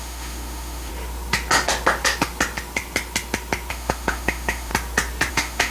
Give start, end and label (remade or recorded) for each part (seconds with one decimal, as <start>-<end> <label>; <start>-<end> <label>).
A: 0.0-0.9 remade; 0.9-3.7 recorded; 3.7-4.7 remade; 4.7-5.3 recorded; 5.3-5.7 remade